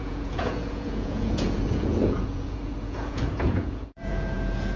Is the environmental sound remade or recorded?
remade